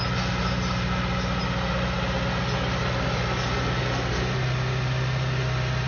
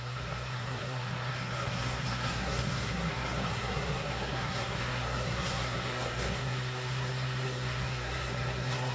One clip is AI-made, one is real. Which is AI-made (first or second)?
second